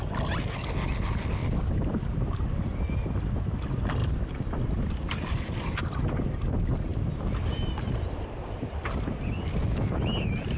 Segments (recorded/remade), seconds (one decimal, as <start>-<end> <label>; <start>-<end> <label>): 0.0-1.4 recorded; 1.4-3.1 remade; 3.1-4.0 recorded; 4.0-5.8 remade; 5.8-6.9 recorded; 6.9-9.0 remade; 9.0-10.6 recorded